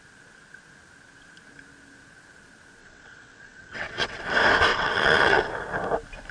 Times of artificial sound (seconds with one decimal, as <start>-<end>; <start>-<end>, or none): 2.8-4.2; 4.7-5.4